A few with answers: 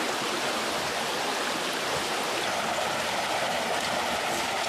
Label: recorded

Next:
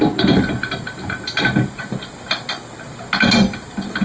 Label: recorded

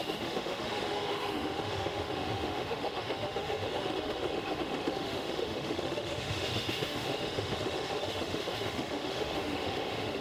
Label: remade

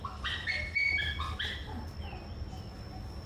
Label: recorded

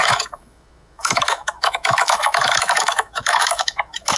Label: remade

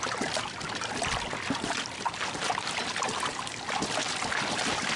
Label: recorded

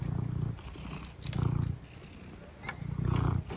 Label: recorded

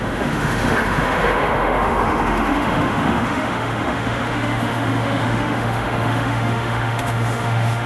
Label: remade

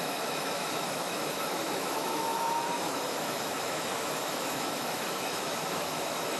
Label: remade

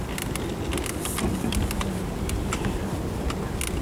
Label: recorded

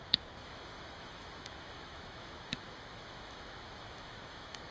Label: remade